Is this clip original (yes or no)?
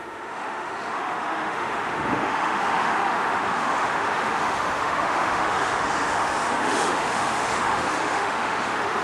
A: no